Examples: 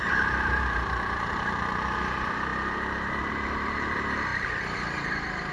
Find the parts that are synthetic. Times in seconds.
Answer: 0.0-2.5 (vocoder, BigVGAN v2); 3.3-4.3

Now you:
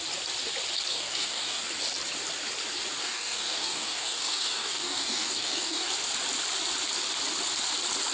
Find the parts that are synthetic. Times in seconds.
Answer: 0.9-1.6 (codec, DAC); 3.0-5.9

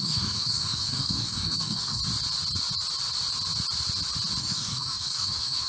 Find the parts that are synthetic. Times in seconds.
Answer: 0.0-2.0 (codec, DAC); 4.4-5.7

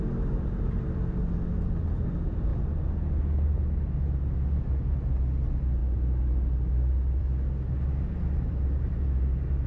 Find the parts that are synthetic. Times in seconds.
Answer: none

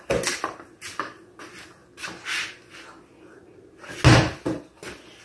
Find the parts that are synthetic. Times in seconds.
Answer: none